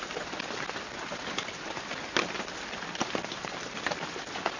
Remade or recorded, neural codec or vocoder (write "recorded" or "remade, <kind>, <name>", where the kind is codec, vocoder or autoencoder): recorded